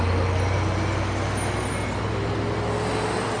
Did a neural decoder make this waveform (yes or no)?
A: no